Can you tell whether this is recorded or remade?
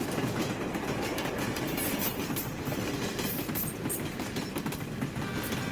recorded